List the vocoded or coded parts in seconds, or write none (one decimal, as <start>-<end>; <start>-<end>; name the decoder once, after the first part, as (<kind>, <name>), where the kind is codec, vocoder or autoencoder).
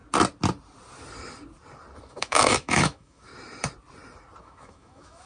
2.1-3.3 (autoencoder, DAC-VAE); 4.4-5.3